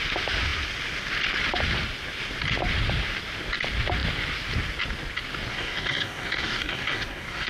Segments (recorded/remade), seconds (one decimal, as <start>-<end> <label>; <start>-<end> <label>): 0.0-5.5 recorded; 5.5-7.5 remade